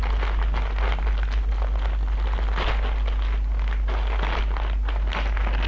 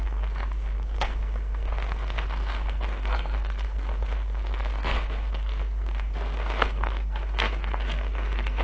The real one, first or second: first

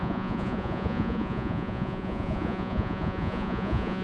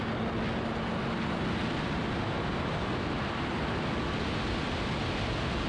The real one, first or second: second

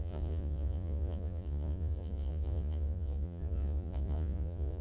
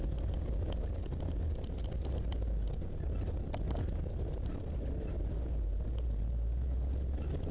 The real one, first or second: second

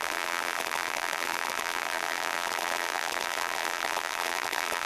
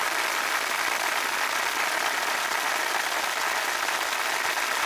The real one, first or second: second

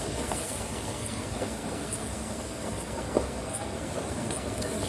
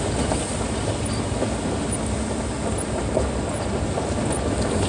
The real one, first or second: second